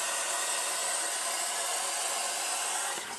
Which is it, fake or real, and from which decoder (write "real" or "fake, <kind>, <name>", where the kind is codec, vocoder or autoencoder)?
real